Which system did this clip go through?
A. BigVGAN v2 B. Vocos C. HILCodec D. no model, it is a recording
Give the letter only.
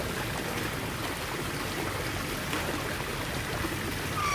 D